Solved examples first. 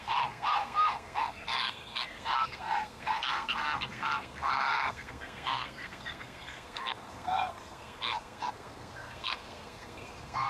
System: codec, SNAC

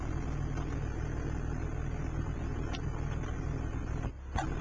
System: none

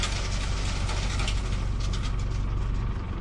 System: none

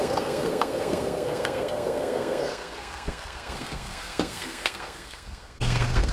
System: codec, SNAC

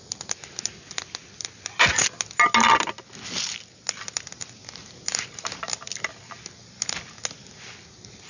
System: none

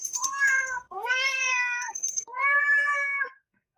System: codec, SNAC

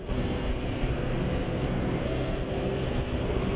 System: codec, SNAC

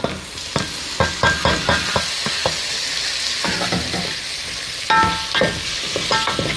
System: none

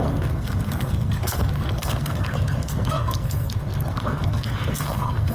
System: codec, SNAC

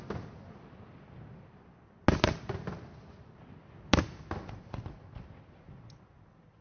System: none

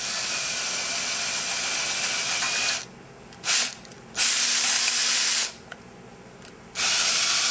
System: none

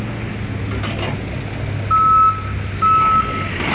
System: none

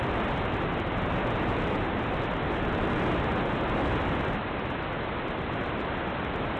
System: none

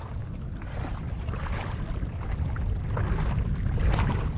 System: none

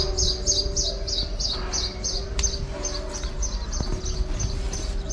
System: none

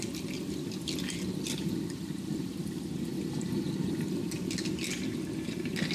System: none